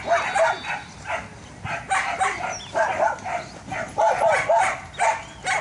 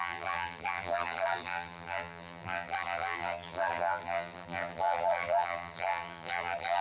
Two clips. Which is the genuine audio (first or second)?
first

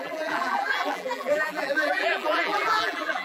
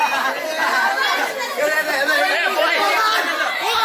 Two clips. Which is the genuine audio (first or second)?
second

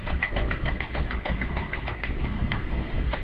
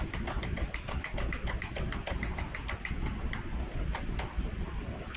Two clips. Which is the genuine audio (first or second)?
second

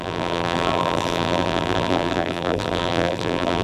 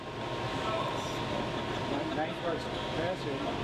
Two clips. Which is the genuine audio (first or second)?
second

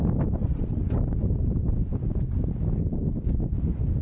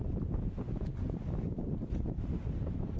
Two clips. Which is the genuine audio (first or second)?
first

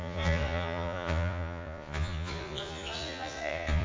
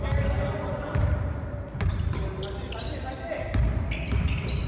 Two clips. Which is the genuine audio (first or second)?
second